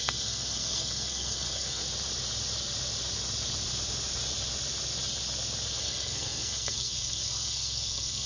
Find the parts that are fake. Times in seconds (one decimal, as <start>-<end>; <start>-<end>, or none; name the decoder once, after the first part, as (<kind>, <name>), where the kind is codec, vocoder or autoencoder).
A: 0.0-1.8 (codec, SNAC); 5.8-8.3

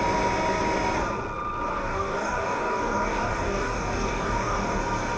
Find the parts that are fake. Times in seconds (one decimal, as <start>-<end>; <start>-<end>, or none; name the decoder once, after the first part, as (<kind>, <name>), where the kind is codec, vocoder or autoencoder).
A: 1.7-4.8 (codec, DAC)

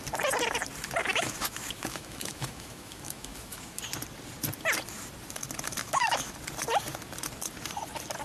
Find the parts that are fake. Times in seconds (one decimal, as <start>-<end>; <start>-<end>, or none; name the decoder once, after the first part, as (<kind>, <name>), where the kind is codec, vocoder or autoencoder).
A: 1.0-3.8 (autoencoder, DAC-VAE); 5.8-6.3

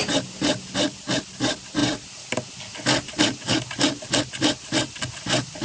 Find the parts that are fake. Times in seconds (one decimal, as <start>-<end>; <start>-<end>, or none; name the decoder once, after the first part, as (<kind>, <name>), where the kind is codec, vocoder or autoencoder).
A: none

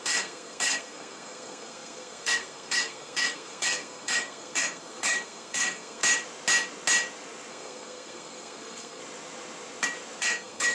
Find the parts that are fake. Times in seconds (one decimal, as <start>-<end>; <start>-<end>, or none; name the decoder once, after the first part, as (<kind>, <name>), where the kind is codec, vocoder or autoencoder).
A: 0.0-6.0 (codec, SNAC); 7.5-9.0; 10.2-10.7

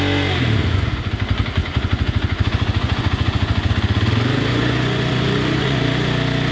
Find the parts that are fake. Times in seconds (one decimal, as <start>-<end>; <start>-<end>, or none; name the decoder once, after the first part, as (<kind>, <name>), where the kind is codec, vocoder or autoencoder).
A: 0.6-1.1 (vocoder, Vocos); 1.6-3.7; 4.5-5.8

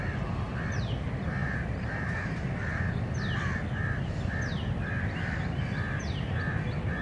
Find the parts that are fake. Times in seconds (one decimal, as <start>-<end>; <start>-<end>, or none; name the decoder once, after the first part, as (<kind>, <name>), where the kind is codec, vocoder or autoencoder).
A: 1.4-2.5 (vocoder, BigVGAN v2)